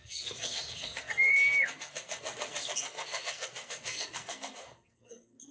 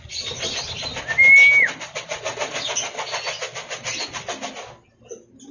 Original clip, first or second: second